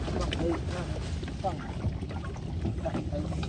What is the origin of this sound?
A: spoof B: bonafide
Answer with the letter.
B